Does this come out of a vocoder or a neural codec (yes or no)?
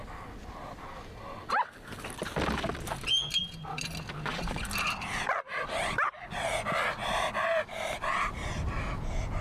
no